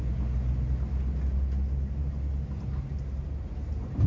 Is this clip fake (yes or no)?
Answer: no